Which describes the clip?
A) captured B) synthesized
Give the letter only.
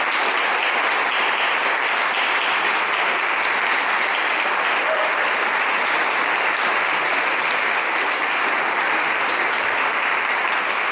A